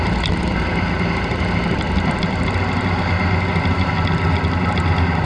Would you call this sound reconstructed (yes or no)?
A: no